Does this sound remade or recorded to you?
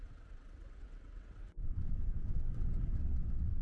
remade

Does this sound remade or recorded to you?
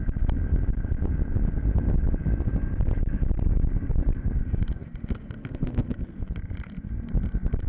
recorded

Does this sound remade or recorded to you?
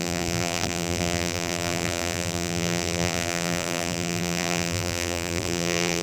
remade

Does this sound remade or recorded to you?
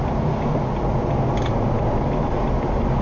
recorded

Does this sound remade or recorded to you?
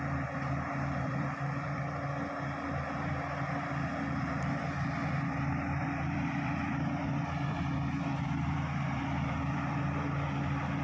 remade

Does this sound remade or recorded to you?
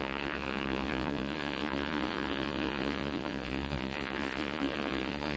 remade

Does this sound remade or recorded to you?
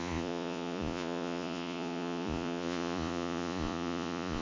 remade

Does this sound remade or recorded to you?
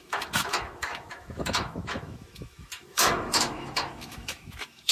remade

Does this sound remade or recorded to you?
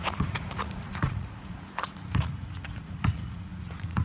remade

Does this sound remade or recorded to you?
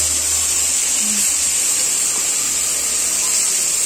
recorded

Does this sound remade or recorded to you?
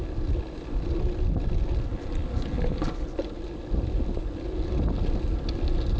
recorded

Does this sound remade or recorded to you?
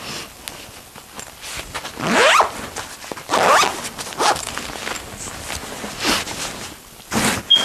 recorded